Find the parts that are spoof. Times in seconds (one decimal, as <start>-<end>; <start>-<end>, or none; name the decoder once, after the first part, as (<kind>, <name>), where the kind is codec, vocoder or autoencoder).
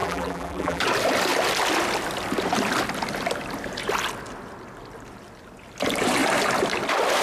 0.0-0.8 (vocoder, BigVGAN v2)